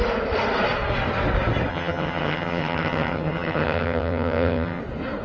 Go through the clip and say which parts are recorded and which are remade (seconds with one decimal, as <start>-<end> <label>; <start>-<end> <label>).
0.0-1.7 recorded; 1.7-4.8 remade; 4.8-5.2 recorded